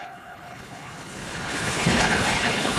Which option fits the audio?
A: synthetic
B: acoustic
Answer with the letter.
A